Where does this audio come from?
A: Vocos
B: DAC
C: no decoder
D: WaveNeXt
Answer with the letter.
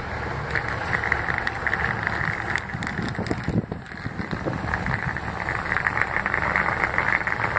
C